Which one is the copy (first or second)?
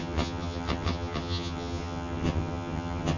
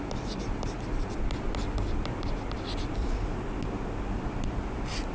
first